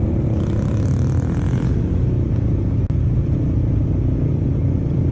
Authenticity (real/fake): real